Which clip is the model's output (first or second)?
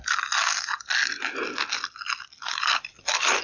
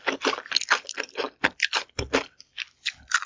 second